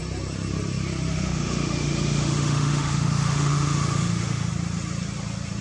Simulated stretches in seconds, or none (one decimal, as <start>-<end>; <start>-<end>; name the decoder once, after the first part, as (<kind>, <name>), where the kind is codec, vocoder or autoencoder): 1.1-4.5 (autoencoder, DAC-VAE)